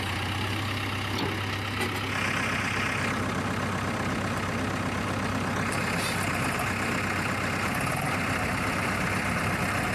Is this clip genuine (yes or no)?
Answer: yes